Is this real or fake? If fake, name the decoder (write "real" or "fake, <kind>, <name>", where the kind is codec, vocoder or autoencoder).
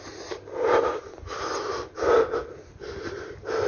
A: real